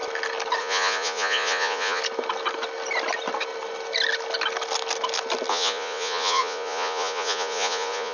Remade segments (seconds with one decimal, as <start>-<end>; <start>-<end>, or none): 0.6-2.0; 5.5-8.1